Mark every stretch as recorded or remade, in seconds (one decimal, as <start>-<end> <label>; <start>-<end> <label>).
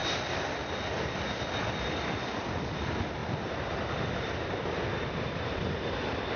0.0-0.7 remade; 0.7-3.2 recorded; 3.2-5.4 remade; 5.4-6.4 recorded